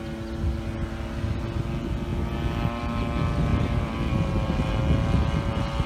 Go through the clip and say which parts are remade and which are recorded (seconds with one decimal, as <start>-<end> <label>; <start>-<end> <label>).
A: 0.0-3.5 recorded; 3.5-4.7 remade; 4.7-5.9 recorded